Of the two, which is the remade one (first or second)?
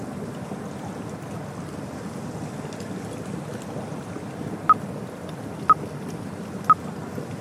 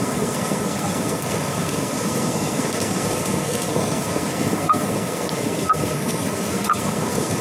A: second